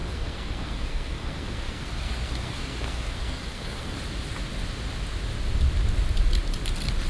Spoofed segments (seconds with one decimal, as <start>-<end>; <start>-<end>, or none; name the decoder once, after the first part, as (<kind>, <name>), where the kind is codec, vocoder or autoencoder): 0.0-4.0 (codec, SNAC)